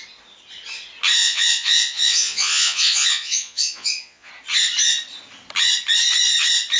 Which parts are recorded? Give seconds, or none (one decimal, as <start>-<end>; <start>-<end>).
0.0-1.2; 4.3-6.8